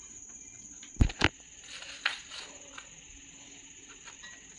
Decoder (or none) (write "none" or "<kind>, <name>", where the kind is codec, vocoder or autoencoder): none